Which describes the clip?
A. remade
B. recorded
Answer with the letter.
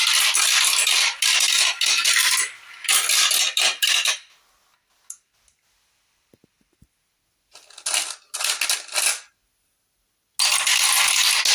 B